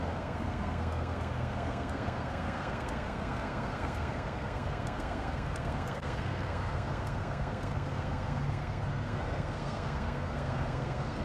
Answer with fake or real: fake